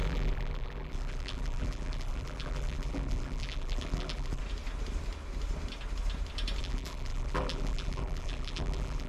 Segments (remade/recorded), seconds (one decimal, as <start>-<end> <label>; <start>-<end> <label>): 0.0-4.4 remade; 4.4-6.6 recorded; 6.6-9.1 remade